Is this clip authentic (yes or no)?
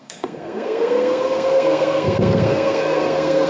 no